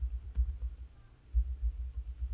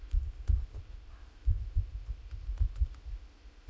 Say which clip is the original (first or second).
first